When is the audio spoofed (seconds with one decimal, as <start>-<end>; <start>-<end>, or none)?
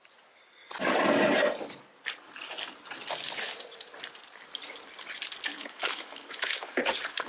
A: 5.5-6.8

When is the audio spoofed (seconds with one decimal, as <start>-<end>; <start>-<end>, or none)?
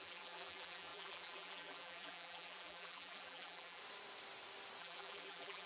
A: 0.0-3.8; 4.8-5.7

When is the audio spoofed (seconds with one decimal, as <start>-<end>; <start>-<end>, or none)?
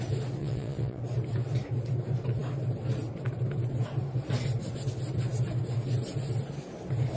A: 0.4-1.0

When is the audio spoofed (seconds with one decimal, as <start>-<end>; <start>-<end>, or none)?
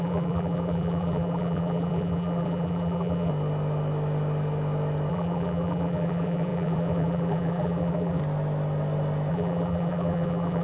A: 0.0-3.3; 5.1-8.2; 9.3-10.6